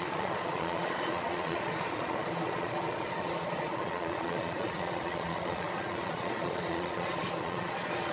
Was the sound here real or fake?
fake